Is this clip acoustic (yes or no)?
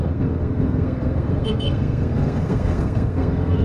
no